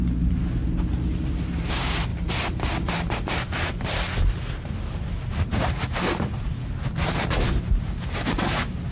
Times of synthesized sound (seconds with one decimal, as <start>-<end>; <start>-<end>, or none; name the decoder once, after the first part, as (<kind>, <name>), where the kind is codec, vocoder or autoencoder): 0.0-0.6 (vocoder, BigVGAN v2); 1.7-2.1; 3.1-8.9